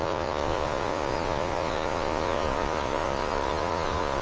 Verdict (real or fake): fake